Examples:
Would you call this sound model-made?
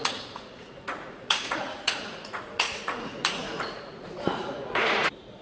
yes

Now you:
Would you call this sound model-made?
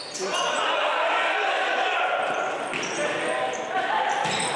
no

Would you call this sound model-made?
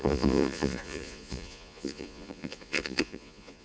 yes